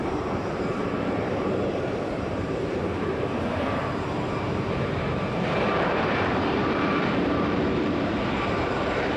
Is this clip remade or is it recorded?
remade